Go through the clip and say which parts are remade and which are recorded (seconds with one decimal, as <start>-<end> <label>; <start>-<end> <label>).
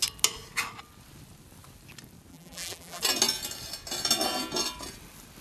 0.0-2.3 recorded; 2.3-3.0 remade; 3.0-5.4 recorded